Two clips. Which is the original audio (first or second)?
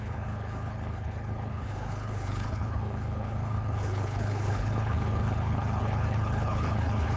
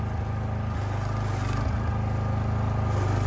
second